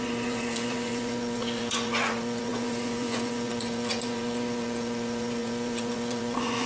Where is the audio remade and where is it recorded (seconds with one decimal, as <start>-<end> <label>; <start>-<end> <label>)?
0.0-6.7 remade

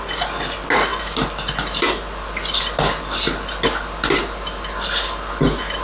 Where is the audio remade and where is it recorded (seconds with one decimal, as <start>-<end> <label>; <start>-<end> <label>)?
0.0-5.8 recorded

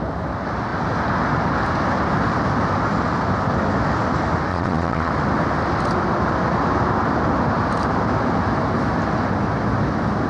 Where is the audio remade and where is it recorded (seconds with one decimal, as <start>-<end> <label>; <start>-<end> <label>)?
0.0-4.5 recorded; 4.5-5.1 remade; 5.1-10.3 recorded

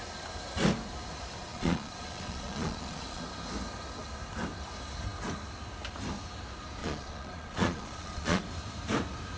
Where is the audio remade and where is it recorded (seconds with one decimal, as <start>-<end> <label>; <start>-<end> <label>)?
0.0-1.5 recorded; 1.5-3.2 remade; 3.2-6.8 recorded; 6.8-8.4 remade; 8.4-9.4 recorded